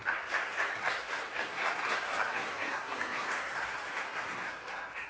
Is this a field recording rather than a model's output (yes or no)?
no